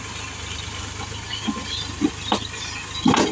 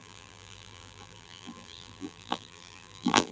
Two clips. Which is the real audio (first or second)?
first